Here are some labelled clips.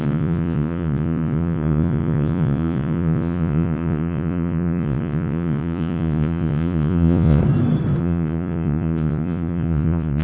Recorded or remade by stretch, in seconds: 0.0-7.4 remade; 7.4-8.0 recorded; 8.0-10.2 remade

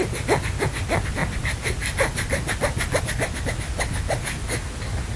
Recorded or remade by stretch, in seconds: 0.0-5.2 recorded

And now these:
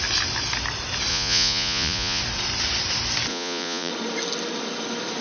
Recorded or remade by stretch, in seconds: 0.0-1.1 recorded; 1.1-2.2 remade; 2.2-3.3 recorded; 3.3-3.9 remade; 3.9-5.2 recorded